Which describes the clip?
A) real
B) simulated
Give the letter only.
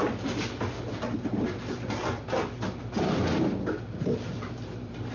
A